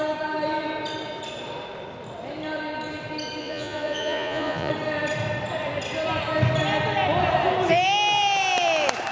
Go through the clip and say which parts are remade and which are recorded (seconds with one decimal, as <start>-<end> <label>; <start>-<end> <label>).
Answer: 0.0-3.4 recorded; 3.4-4.7 remade; 4.7-9.1 recorded